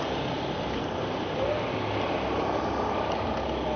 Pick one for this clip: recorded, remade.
recorded